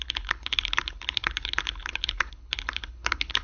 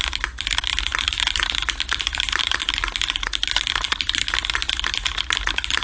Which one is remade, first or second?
first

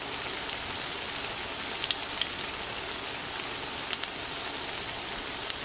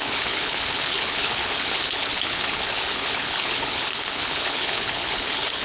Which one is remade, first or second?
second